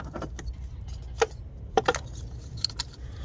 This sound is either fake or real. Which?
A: real